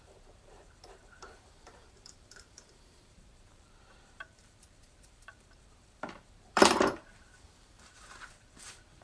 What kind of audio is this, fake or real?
fake